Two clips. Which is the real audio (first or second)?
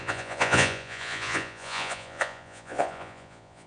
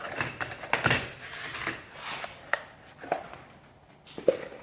second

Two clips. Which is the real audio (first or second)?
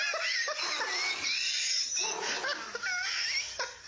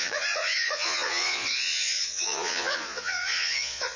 first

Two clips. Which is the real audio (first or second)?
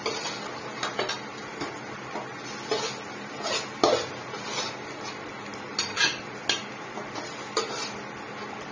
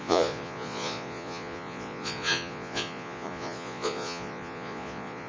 first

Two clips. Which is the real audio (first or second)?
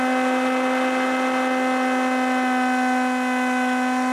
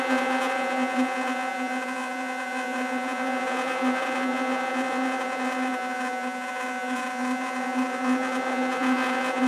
first